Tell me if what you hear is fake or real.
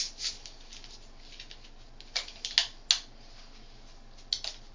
real